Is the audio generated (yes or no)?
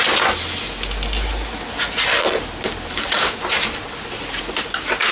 no